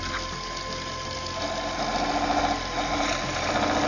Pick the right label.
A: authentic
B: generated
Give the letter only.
A